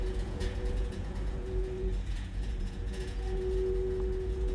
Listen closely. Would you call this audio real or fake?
fake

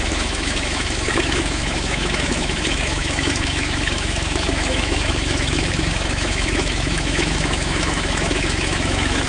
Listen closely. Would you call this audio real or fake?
fake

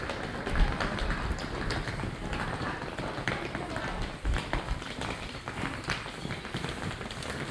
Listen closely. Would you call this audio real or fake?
real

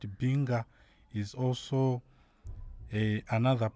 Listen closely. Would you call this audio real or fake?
real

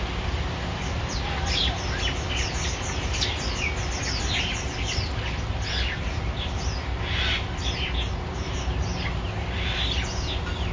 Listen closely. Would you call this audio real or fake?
real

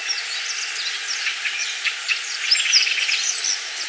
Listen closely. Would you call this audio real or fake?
real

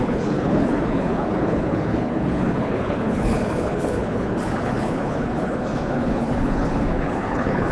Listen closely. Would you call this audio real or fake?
fake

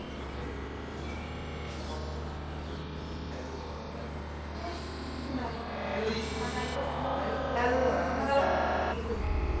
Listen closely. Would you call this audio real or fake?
real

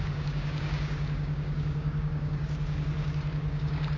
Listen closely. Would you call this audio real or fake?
fake